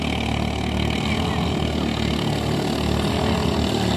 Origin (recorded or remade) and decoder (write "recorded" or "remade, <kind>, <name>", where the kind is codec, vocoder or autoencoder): recorded